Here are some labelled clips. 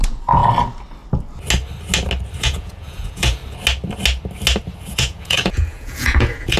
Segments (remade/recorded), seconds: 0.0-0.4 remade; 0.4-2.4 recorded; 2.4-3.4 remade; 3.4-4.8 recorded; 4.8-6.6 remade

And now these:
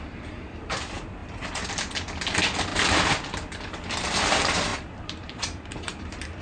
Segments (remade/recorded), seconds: 0.0-2.7 remade; 2.7-3.4 recorded; 3.4-6.4 remade

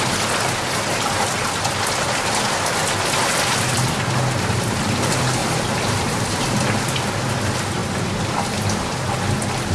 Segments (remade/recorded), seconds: 0.0-5.4 recorded; 5.4-6.5 remade; 6.5-9.7 recorded

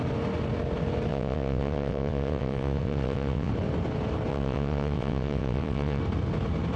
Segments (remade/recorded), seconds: 0.0-1.1 recorded; 1.1-3.5 remade; 3.5-4.3 recorded; 4.3-6.0 remade; 6.0-6.8 recorded